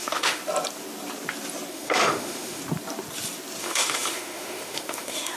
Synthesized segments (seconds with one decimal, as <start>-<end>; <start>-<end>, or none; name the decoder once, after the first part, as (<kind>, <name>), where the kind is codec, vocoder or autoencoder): 0.0-0.4 (autoencoder, DAC-VAE); 1.7-2.6; 3.6-5.4